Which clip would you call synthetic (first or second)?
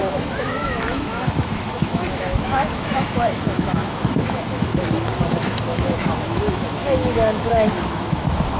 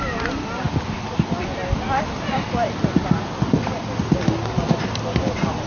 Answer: first